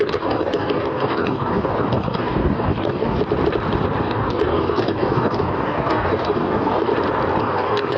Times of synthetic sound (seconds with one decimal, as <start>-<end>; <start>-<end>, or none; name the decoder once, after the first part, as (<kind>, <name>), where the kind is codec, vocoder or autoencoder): 0.0-3.2 (codec, DAC); 4.0-6.9; 7.4-8.0